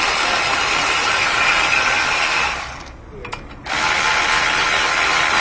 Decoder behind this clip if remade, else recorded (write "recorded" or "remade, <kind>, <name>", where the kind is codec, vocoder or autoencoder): recorded